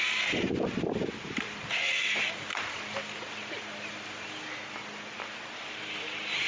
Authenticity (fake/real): real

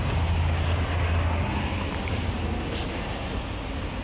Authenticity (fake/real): real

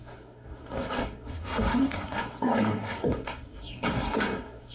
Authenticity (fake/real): fake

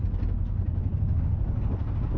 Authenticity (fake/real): real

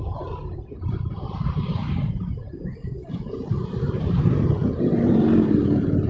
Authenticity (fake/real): fake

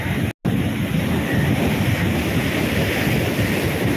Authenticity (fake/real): real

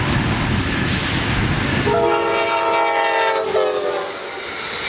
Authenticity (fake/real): real